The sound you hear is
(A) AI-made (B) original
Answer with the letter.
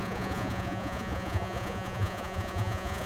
A